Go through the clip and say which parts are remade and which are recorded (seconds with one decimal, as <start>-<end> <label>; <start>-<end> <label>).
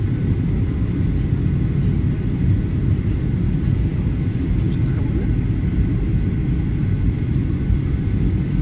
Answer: 0.0-8.6 recorded